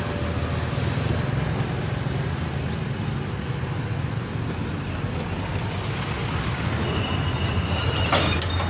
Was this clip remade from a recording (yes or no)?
no